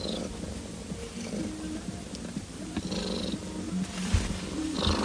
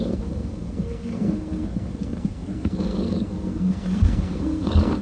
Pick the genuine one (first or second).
first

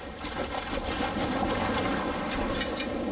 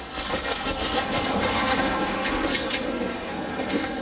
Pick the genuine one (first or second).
first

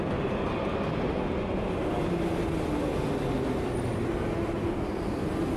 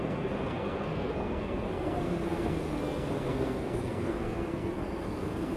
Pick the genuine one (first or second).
first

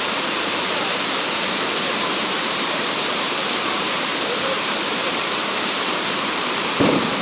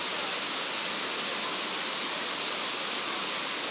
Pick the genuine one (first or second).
second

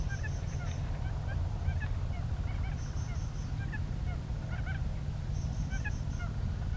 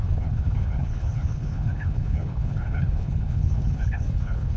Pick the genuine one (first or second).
first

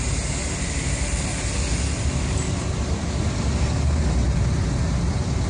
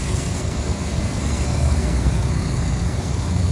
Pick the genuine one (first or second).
first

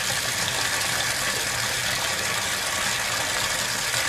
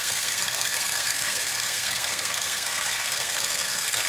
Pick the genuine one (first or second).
first